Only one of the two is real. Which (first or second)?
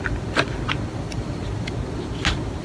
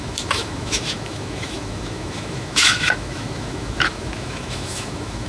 first